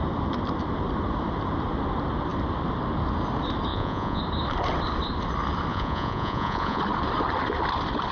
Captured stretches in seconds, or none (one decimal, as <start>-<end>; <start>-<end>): 0.0-3.7; 4.2-5.7; 6.8-8.1